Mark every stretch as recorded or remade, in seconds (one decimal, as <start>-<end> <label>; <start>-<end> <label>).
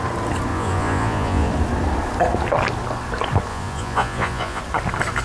0.0-0.5 recorded; 0.5-1.5 remade; 1.5-3.5 recorded; 3.5-4.6 remade; 4.6-5.2 recorded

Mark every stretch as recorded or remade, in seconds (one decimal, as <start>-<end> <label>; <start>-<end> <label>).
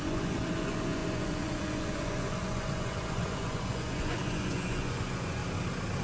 0.0-5.4 remade; 5.4-6.0 recorded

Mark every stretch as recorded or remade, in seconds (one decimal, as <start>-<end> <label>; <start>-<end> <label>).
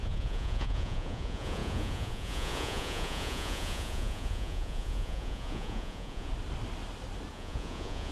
0.0-6.3 remade; 6.3-7.3 recorded; 7.3-8.1 remade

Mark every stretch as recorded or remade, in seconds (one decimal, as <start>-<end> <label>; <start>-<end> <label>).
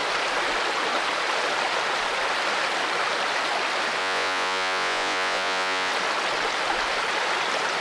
0.0-4.0 recorded; 4.0-5.9 remade; 5.9-7.8 recorded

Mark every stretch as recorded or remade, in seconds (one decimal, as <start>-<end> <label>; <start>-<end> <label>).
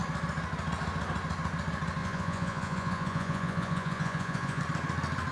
0.0-2.0 recorded; 2.0-4.6 remade; 4.6-5.3 recorded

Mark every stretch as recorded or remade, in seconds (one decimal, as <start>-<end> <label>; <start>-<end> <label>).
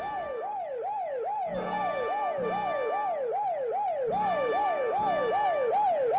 0.0-6.2 recorded